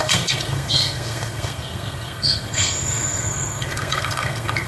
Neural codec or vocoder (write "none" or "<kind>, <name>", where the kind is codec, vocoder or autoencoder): codec, SNAC